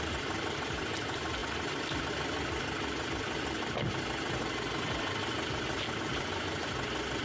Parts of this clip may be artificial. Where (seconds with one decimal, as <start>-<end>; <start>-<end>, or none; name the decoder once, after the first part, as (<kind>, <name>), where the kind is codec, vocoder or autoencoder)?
none